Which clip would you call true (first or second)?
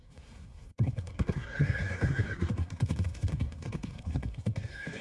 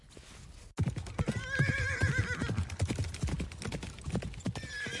second